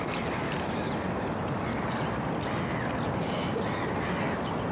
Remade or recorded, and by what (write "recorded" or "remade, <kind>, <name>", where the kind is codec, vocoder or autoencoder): recorded